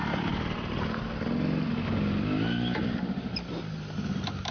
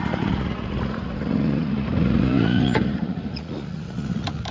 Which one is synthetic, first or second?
second